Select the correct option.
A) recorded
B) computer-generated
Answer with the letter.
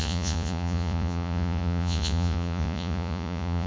B